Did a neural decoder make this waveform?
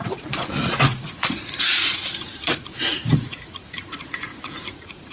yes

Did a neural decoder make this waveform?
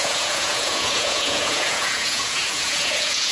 yes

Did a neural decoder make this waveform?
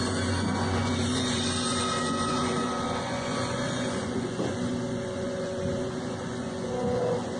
yes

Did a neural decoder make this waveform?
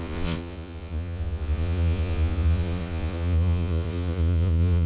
yes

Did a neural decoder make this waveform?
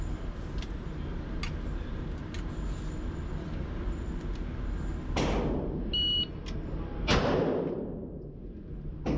no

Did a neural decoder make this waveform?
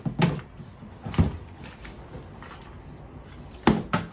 no